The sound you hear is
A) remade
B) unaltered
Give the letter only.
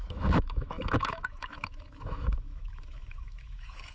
A